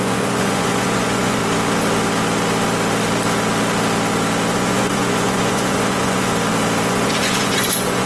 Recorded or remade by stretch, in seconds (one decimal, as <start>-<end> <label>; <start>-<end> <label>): 0.0-1.4 remade; 1.4-4.5 recorded; 4.5-6.3 remade; 6.3-6.9 recorded; 6.9-8.1 remade